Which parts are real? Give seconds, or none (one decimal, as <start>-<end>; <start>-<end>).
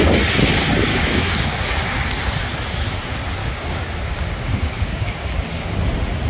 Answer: 0.0-0.9; 1.6-3.4; 5.3-6.3